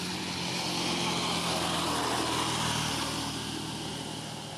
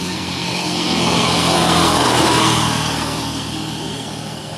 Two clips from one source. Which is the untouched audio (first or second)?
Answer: first